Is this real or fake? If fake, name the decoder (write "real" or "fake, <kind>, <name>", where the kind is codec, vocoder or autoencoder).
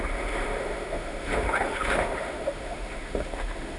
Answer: fake, autoencoder, DAC-VAE